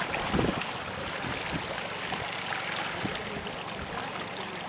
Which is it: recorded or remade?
recorded